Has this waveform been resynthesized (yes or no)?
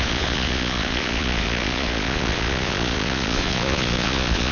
yes